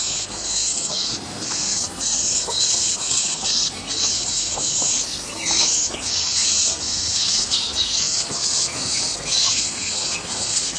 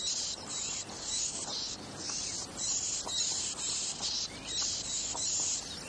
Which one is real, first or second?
second